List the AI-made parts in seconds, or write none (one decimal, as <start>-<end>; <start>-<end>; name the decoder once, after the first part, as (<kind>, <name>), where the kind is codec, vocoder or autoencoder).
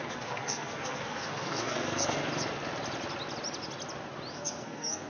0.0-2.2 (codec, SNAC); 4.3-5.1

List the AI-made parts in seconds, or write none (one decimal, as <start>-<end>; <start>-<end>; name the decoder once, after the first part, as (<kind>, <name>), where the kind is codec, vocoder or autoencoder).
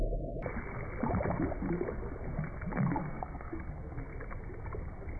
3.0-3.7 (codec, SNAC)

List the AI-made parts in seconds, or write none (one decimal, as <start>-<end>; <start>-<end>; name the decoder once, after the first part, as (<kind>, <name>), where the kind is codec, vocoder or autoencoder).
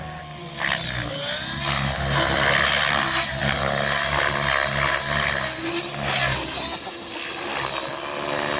none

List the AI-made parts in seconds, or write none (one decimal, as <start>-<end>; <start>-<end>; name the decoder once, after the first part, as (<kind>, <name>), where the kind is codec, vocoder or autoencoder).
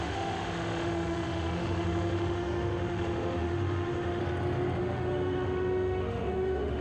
0.0-4.2 (autoencoder, DAC-VAE); 4.8-6.8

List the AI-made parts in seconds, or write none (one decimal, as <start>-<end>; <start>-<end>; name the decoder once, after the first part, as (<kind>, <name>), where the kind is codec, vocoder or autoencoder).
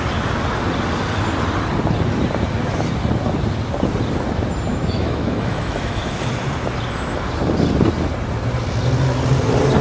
4.7-6.3 (autoencoder, DAC-VAE)